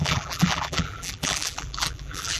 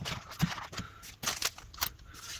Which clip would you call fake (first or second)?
first